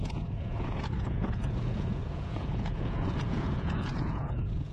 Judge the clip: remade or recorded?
remade